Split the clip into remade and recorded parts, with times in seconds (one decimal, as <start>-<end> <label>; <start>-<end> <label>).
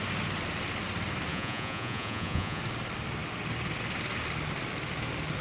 0.0-1.3 recorded; 1.3-2.6 remade; 2.6-5.4 recorded